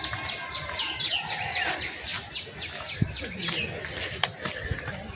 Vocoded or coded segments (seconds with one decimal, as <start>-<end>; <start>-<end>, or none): none